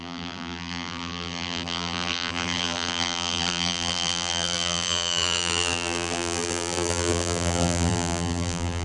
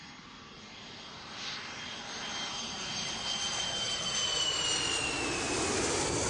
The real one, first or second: second